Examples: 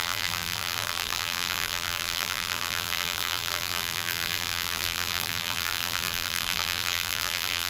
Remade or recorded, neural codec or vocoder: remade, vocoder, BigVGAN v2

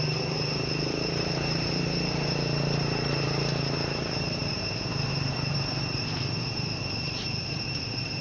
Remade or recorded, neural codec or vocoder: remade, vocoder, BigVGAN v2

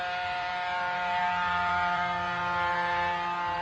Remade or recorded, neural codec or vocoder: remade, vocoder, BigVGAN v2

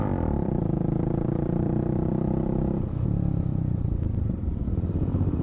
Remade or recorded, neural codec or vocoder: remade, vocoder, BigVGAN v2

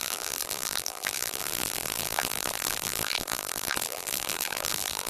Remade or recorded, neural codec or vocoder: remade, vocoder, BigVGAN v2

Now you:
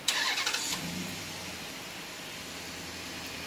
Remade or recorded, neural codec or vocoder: remade, vocoder, BigVGAN v2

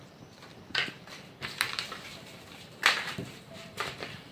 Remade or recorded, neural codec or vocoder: remade, vocoder, BigVGAN v2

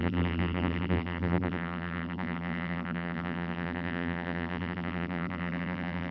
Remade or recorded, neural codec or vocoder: remade, vocoder, BigVGAN v2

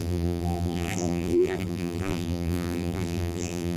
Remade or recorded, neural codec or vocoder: remade, vocoder, BigVGAN v2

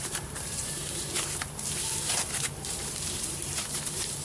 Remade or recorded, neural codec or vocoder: remade, vocoder, BigVGAN v2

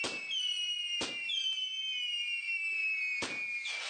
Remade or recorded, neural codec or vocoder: recorded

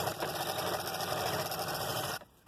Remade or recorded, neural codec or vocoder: remade, vocoder, BigVGAN v2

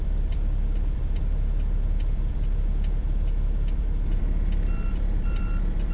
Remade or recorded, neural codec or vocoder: remade, vocoder, BigVGAN v2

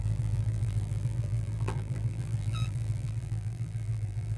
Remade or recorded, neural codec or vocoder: remade, vocoder, BigVGAN v2